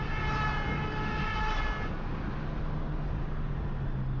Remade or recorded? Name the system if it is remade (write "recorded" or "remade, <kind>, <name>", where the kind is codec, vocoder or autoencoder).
recorded